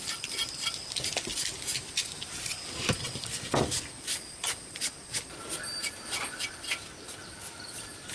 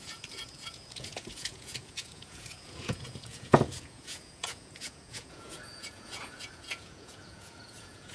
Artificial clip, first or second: second